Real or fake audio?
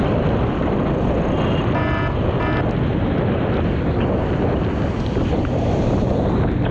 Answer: real